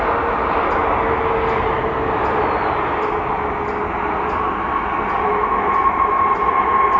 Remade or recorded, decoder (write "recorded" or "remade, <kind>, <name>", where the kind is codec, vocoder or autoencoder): recorded